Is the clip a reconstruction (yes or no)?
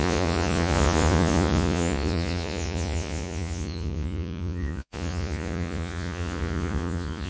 yes